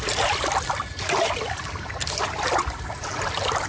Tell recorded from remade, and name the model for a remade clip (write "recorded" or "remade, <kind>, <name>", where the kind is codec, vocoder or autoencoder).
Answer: recorded